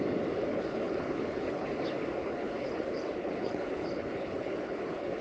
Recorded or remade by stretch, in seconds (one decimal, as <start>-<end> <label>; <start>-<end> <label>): 0.0-0.5 recorded; 0.5-1.8 remade; 1.8-2.2 recorded; 2.2-5.2 remade